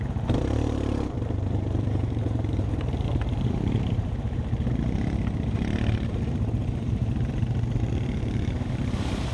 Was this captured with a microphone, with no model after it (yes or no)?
no